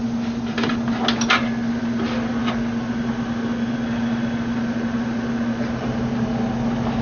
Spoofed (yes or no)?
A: no